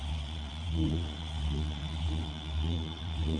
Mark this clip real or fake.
fake